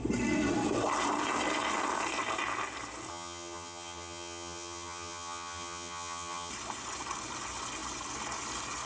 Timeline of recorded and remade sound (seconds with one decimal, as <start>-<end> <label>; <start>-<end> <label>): 0.0-3.1 recorded; 3.1-6.5 remade; 6.5-8.9 recorded